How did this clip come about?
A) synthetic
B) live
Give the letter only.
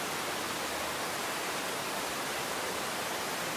B